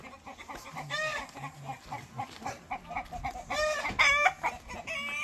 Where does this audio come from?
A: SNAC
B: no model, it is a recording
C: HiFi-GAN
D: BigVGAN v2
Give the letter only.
B